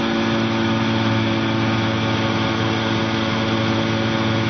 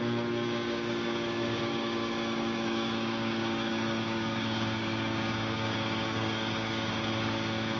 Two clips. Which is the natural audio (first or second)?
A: first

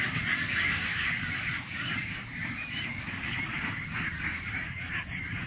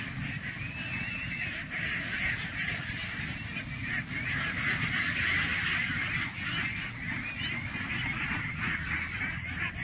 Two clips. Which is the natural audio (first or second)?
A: second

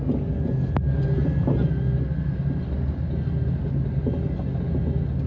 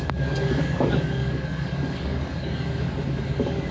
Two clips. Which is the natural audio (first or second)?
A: first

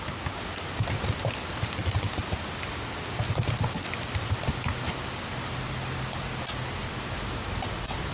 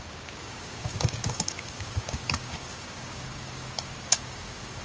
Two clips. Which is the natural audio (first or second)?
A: first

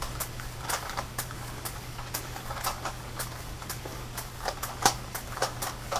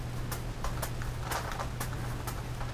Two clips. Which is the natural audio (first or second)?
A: second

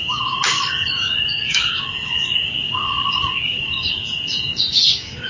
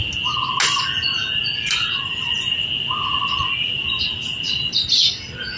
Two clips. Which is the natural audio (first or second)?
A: second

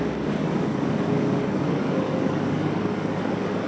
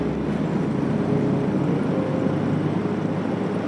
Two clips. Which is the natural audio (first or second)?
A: second